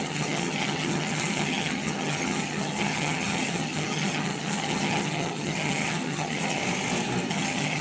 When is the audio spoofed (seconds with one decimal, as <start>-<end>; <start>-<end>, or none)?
0.0-6.6; 7.3-7.8